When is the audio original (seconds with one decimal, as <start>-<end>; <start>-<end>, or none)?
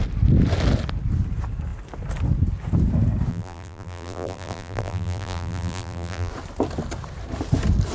0.0-3.3; 6.3-7.9